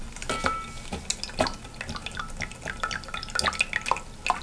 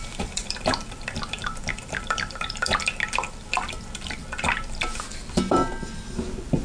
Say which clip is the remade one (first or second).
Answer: second